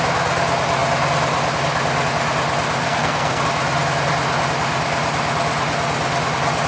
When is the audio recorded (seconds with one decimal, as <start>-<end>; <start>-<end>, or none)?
0.0-2.8; 3.4-6.7